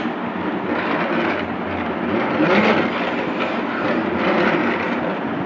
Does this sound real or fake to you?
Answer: real